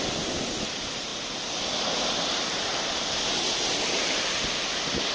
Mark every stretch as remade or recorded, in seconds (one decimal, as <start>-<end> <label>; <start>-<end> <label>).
0.0-5.1 recorded